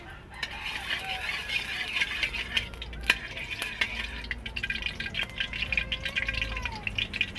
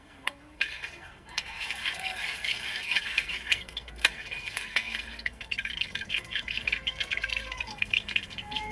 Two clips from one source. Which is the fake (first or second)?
second